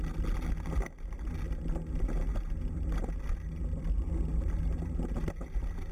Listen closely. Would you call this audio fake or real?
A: real